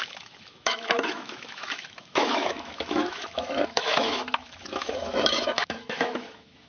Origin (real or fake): fake